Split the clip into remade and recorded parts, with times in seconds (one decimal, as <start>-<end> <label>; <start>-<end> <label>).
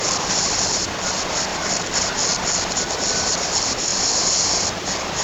0.0-1.5 recorded; 1.5-2.1 remade; 2.1-5.2 recorded